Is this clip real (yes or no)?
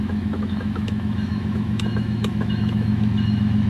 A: no